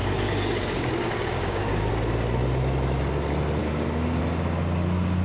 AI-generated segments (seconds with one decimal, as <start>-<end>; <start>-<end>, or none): 0.0-1.9; 3.6-4.2